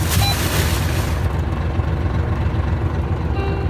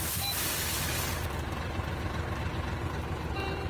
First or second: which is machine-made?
second